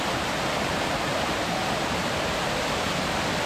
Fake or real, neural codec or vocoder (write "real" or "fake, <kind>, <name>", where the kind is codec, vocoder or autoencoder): real